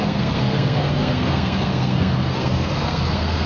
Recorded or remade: remade